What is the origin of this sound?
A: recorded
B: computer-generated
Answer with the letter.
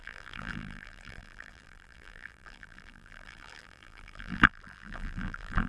B